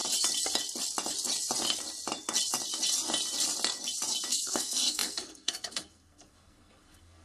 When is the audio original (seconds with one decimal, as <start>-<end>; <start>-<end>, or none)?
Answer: 0.0-4.3